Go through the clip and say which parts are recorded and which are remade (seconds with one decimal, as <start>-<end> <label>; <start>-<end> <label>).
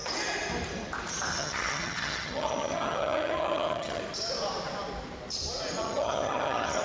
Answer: 0.0-1.3 recorded; 1.3-4.0 remade; 4.0-5.8 recorded; 5.8-6.8 remade